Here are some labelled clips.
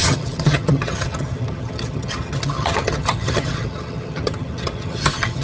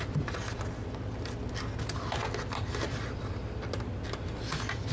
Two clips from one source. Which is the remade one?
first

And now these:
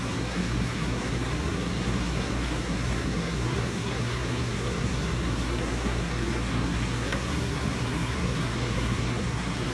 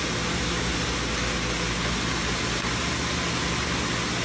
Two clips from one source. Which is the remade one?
first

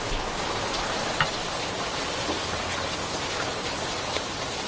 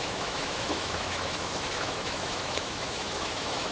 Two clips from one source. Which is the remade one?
second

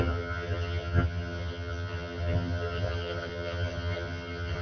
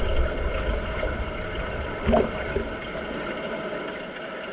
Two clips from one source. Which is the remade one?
first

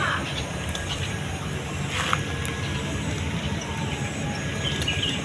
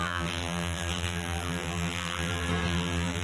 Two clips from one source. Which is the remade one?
second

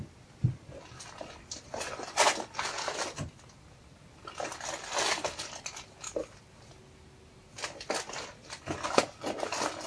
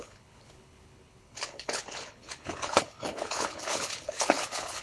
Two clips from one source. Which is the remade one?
second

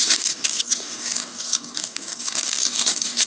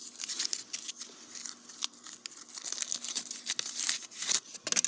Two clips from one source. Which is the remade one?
first